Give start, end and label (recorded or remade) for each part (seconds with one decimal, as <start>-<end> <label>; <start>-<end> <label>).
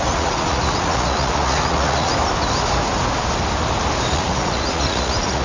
0.0-2.1 remade; 2.1-4.1 recorded; 4.1-5.4 remade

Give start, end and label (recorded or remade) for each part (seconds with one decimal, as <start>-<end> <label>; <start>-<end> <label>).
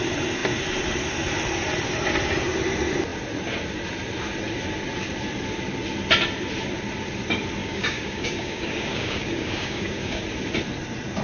0.0-7.6 recorded; 7.6-10.2 remade; 10.2-11.2 recorded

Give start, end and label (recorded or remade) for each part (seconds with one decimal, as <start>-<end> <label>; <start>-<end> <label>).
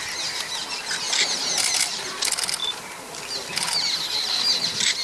0.0-5.0 recorded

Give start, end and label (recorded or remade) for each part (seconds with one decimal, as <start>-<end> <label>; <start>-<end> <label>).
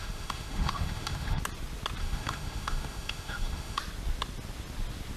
0.0-1.4 remade; 1.4-2.0 recorded; 2.0-3.8 remade; 3.8-5.2 recorded